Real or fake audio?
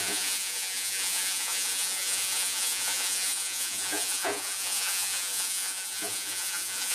fake